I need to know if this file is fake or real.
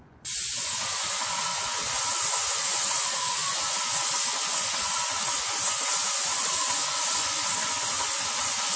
fake